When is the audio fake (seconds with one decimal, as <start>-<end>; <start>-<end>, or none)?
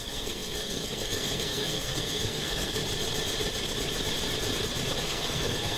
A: 0.0-2.8; 5.0-5.8